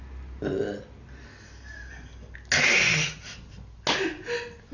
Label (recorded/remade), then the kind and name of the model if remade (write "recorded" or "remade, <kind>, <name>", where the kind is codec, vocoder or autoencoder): recorded